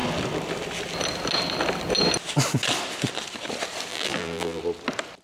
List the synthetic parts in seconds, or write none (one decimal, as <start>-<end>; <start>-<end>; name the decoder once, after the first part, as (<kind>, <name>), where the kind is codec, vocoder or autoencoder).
3.9-4.6 (vocoder, BigVGAN v2)